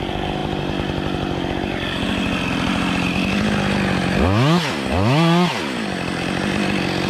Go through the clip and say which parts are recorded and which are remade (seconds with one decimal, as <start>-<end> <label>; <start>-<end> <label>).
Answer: 0.0-7.1 recorded